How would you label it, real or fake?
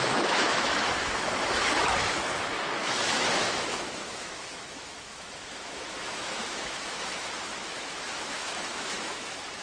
fake